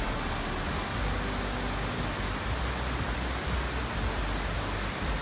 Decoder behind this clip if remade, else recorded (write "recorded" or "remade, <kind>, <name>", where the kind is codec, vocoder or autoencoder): recorded